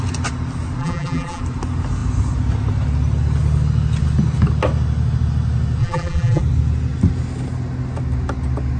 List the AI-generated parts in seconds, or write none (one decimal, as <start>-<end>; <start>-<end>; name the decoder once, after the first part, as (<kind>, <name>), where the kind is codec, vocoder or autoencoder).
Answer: 0.8-1.4 (vocoder, BigVGAN v2); 5.8-6.4